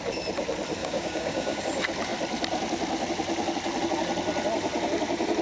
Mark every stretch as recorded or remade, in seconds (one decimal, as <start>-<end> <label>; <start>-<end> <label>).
0.0-0.8 recorded; 0.8-1.6 remade; 1.6-5.4 recorded